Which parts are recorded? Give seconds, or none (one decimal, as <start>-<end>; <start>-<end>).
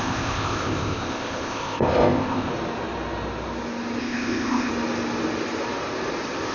2.5-4.0; 4.7-6.5